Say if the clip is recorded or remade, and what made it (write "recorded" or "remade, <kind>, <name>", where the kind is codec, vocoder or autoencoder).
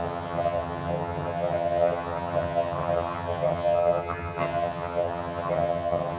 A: remade, vocoder, HiFi-GAN